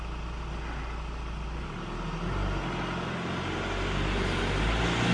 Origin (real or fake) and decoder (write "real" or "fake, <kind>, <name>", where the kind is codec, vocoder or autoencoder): real